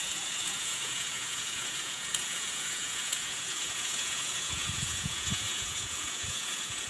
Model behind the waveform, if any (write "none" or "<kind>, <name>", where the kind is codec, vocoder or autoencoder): vocoder, Vocos